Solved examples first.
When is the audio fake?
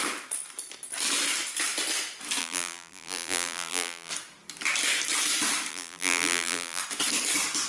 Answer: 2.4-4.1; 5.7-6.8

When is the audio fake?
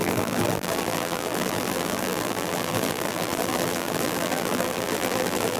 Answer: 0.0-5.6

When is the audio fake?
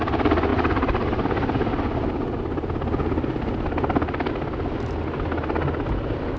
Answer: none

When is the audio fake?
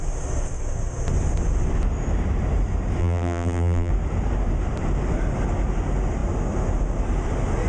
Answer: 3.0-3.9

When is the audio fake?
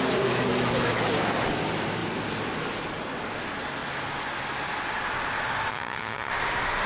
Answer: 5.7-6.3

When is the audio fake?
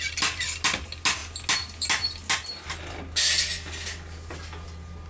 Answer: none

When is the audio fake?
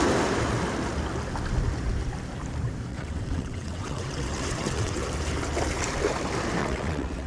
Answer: 2.9-5.0; 6.6-7.3